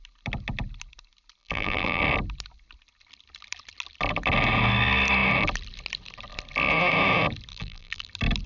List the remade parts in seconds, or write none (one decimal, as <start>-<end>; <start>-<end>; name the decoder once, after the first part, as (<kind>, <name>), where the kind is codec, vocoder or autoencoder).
1.4-2.0 (vocoder, BigVGAN v2); 7.5-8.1